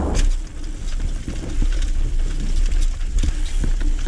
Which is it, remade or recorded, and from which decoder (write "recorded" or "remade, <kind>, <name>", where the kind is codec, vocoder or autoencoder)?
recorded